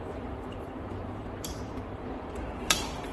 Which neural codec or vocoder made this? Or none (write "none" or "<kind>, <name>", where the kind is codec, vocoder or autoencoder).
vocoder, BigVGAN v2